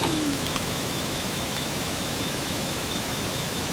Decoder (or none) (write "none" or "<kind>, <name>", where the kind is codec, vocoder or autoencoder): autoencoder, DAC-VAE